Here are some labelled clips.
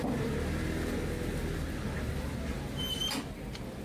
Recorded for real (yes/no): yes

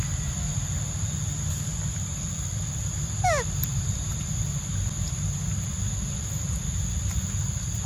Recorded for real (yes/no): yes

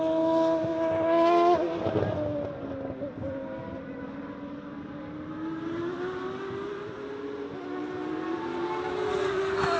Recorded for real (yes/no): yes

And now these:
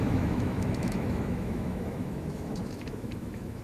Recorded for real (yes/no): no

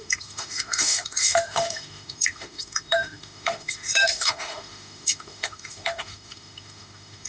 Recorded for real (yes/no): no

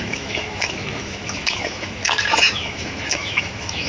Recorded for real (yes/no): no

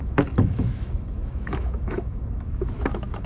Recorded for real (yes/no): no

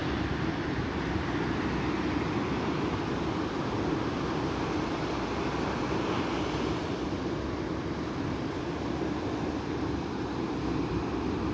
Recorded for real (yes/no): yes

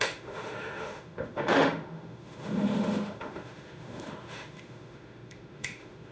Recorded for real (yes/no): no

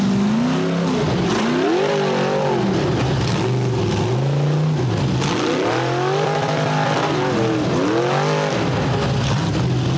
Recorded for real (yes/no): yes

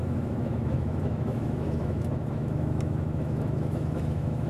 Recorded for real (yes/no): no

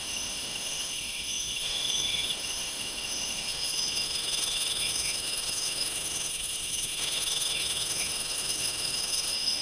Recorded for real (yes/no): no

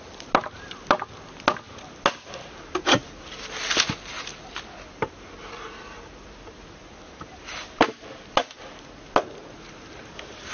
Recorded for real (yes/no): yes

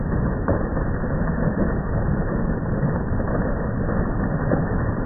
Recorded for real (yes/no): yes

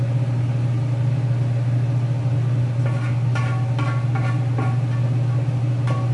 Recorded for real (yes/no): yes